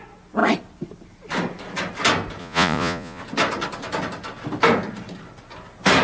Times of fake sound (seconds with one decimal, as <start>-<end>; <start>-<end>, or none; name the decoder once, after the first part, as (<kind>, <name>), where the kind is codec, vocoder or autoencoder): 2.4-3.2 (vocoder, Vocos)